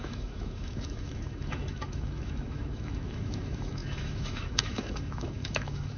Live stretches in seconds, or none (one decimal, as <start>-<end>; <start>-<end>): none